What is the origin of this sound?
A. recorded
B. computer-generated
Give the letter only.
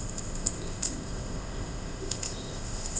B